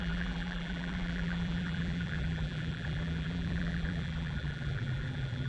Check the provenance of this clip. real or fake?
fake